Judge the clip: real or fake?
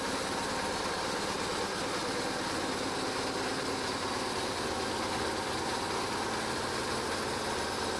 real